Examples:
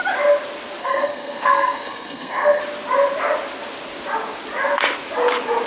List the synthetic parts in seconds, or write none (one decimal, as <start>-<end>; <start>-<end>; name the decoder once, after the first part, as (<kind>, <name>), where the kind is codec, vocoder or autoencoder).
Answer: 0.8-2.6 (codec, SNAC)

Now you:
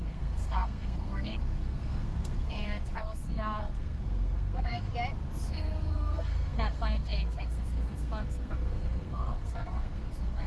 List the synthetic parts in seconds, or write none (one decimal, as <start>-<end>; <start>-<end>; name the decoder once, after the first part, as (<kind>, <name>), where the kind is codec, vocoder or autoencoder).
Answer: 0.0-4.9 (codec, SNAC); 5.5-10.5

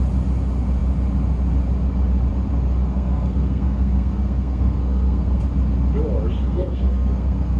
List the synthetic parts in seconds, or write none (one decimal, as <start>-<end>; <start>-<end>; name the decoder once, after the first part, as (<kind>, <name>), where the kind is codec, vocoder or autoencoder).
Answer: 2.9-5.4 (codec, SNAC); 6.3-7.6

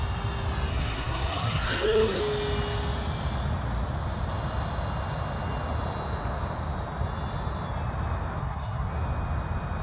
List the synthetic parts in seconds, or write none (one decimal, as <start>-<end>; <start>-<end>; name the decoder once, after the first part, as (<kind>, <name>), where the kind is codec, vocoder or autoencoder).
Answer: 0.7-2.2 (codec, SNAC); 8.4-8.9